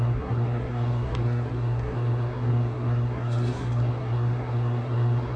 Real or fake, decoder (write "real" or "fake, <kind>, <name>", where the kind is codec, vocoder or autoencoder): fake, codec, SNAC